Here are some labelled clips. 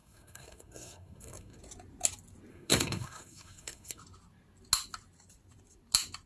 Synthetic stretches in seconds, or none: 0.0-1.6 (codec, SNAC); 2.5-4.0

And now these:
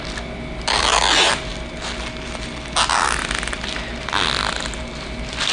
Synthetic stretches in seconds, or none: none

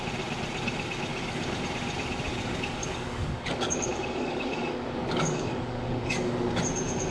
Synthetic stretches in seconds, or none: 1.1-1.6 (codec, DAC); 2.3-6.6

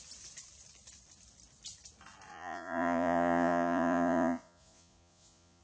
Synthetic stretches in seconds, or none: 2.3-5.6 (vocoder, Vocos)